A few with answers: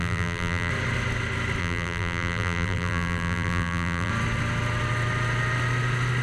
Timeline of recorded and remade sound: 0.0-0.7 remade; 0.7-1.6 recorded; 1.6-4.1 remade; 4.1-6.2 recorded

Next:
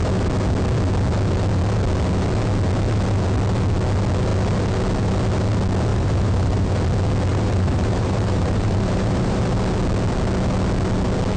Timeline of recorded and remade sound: 0.0-5.9 recorded; 5.9-6.7 remade; 6.7-7.3 recorded; 7.3-9.4 remade; 9.4-11.4 recorded

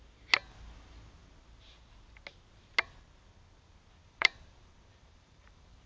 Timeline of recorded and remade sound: 0.0-4.0 recorded; 4.0-5.9 remade

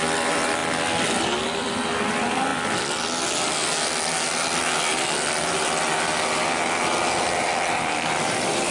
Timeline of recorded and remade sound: 0.0-0.6 remade; 0.6-1.4 recorded; 1.4-2.5 remade; 2.5-7.1 recorded; 7.1-8.7 remade

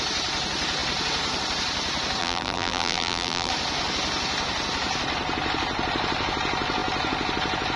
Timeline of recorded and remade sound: 0.0-2.2 recorded; 2.2-3.5 remade; 3.5-7.8 recorded

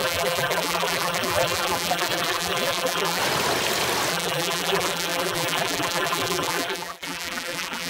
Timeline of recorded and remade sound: 0.0-3.2 remade; 3.2-4.1 recorded; 4.1-7.9 remade

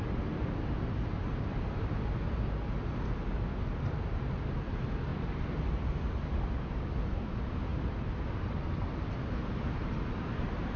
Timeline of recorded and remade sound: 0.0-5.1 recorded; 5.1-6.2 remade; 6.2-7.7 recorded; 7.7-8.9 remade; 8.9-10.8 recorded

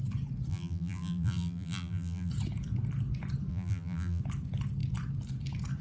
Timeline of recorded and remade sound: 0.0-0.5 recorded; 0.5-2.3 remade; 2.3-3.5 recorded; 3.5-4.2 remade; 4.2-5.8 recorded